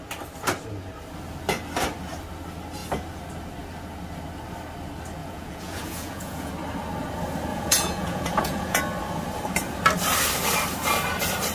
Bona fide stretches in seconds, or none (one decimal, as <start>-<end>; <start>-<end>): 0.0-5.2; 6.5-7.5; 8.8-11.5